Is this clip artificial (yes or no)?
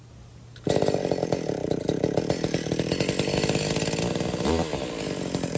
no